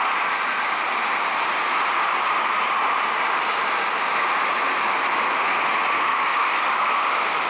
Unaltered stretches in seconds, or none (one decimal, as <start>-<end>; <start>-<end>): 0.0-6.1; 7.1-7.5